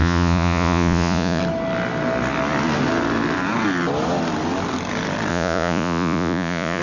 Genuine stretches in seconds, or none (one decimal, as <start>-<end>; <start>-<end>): 1.4-5.3